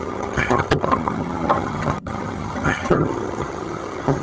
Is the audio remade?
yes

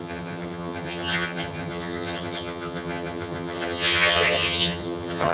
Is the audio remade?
yes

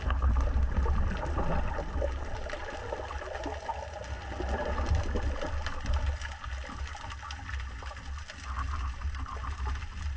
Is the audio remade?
no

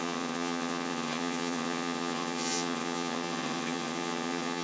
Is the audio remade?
yes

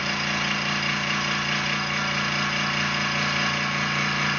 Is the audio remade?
no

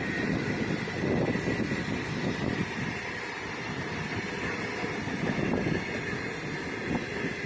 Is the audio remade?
no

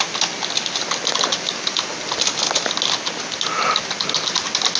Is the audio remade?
no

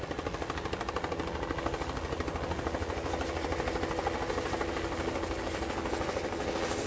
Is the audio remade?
no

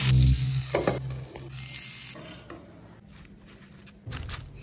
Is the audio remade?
no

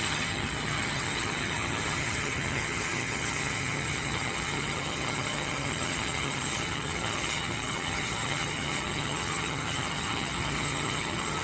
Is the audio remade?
yes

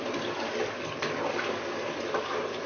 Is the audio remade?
no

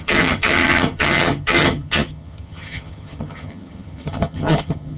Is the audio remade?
yes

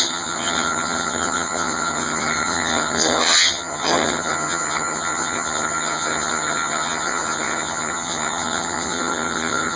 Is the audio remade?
yes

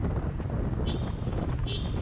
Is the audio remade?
no